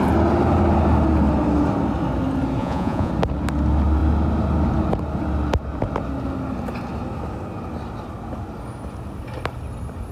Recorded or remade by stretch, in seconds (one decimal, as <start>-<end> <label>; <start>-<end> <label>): 0.0-2.6 recorded; 2.6-3.1 remade; 3.1-10.1 recorded